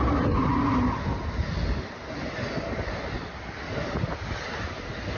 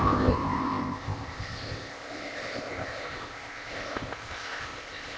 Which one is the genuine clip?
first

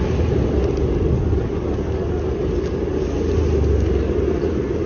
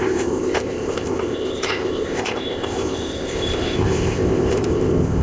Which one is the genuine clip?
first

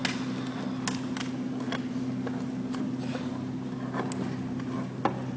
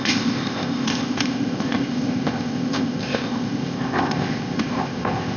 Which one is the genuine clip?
first